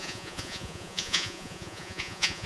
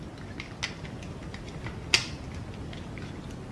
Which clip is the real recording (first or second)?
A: second